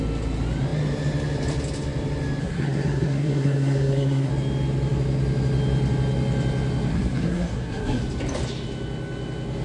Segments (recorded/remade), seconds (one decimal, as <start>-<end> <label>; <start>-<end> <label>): 0.0-2.4 recorded; 2.4-4.3 remade; 4.3-6.9 recorded; 6.9-8.0 remade; 8.0-9.6 recorded

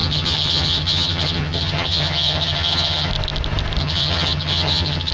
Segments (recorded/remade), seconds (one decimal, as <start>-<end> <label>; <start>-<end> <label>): 0.0-3.1 remade; 3.1-3.8 recorded; 3.8-5.1 remade

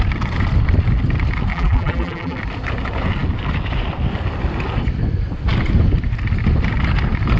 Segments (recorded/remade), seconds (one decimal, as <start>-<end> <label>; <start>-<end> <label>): 0.0-1.5 recorded; 1.5-2.4 remade; 2.4-7.4 recorded

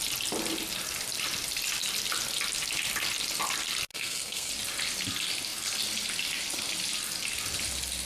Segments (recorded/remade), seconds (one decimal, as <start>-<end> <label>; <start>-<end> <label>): 0.0-3.9 recorded; 3.9-4.5 remade; 4.5-8.1 recorded

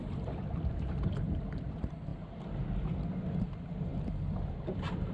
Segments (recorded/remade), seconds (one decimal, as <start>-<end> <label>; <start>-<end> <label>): 0.0-2.1 remade; 2.1-3.5 recorded; 3.5-3.9 remade; 3.9-4.5 recorded; 4.5-5.1 remade

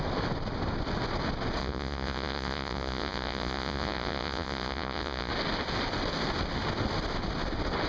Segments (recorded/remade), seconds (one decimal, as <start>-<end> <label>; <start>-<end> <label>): 0.0-1.6 recorded; 1.6-5.3 remade; 5.3-7.9 recorded

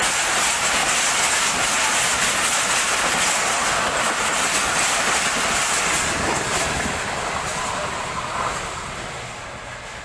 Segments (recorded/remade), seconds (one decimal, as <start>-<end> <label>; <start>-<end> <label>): 0.0-6.5 recorded; 6.5-8.1 remade; 8.1-10.0 recorded